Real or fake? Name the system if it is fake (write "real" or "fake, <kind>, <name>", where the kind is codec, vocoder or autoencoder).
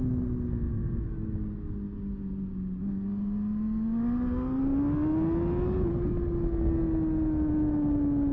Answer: real